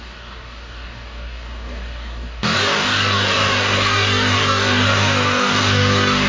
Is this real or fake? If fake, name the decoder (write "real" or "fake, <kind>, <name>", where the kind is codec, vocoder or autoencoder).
fake, codec, DAC